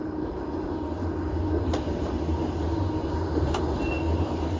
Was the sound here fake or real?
real